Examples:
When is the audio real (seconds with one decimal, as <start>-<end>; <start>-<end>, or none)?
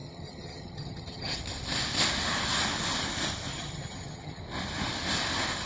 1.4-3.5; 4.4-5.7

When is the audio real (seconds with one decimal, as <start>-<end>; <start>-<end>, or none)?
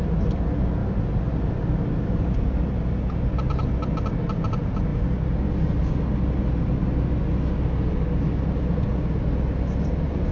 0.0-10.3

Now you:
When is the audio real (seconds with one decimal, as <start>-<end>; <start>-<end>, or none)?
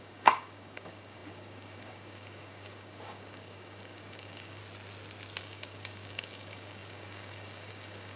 4.6-5.4